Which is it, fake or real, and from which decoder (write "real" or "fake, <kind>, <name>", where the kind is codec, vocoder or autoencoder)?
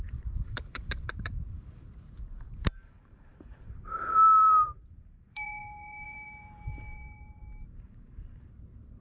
fake, vocoder, BigVGAN v2